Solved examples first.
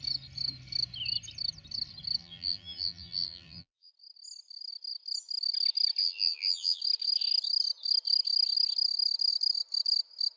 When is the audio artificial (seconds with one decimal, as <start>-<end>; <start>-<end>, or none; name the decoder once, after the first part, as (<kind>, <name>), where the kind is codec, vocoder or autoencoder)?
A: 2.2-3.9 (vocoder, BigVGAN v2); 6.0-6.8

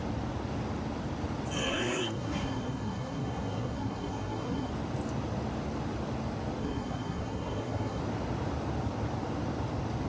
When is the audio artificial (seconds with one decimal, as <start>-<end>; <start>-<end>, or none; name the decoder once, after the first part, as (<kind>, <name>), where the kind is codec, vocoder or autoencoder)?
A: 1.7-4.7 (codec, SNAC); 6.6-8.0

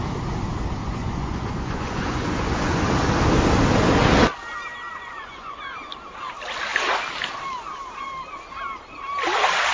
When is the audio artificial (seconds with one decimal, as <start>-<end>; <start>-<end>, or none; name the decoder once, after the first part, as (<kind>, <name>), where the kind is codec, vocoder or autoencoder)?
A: 0.8-2.8 (vocoder, Vocos); 4.9-5.6

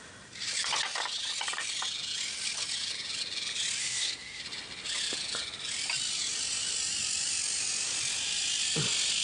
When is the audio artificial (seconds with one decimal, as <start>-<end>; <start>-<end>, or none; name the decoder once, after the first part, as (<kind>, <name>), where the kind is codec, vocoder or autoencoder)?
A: 3.8-4.4 (codec, SNAC)

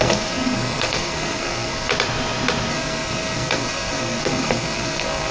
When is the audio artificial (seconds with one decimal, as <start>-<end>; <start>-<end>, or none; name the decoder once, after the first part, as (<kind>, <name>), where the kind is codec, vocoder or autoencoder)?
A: 0.0-1.9 (codec, SNAC); 2.7-5.3

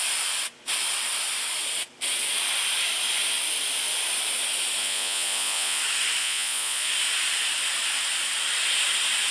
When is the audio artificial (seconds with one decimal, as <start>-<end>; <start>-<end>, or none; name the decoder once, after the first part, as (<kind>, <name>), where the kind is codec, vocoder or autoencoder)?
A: 4.8-5.8 (vocoder, Vocos); 6.2-6.9

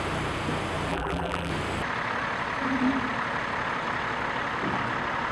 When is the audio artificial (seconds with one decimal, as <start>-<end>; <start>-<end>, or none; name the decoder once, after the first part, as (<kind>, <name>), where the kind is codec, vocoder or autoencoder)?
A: 0.9-1.5 (vocoder, BigVGAN v2)